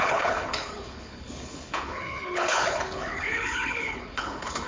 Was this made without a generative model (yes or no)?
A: no